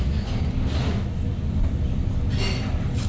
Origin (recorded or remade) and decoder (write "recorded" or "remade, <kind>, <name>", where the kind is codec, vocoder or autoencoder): recorded